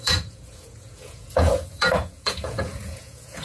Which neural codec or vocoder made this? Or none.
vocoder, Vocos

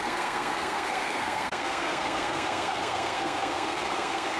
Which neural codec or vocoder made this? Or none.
codec, SNAC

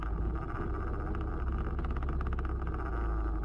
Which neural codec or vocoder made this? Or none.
none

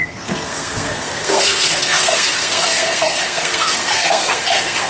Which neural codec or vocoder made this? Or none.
codec, SNAC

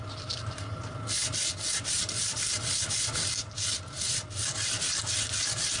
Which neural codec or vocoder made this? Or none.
none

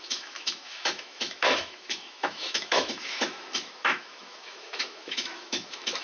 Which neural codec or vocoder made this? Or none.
autoencoder, DAC-VAE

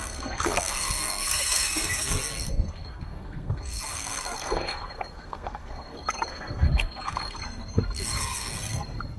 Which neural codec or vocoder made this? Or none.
codec, SNAC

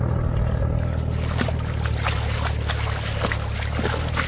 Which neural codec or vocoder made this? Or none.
none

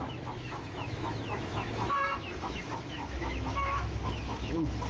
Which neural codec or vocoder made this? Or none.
autoencoder, DAC-VAE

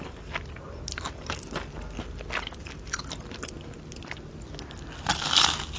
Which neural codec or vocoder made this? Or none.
none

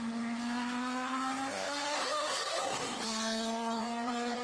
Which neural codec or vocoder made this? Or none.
codec, SNAC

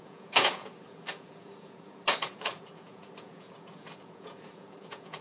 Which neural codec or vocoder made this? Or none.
vocoder, Vocos